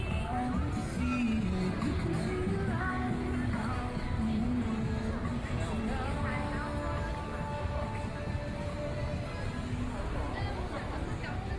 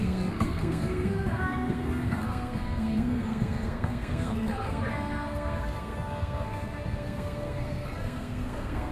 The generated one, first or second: second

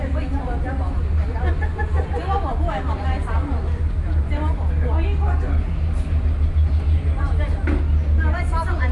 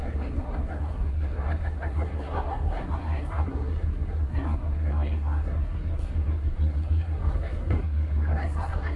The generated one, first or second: second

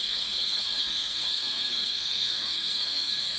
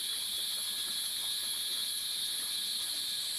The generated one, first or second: first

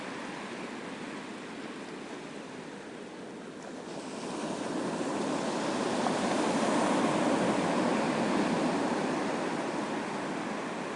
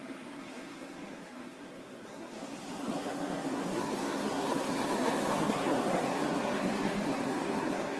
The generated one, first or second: second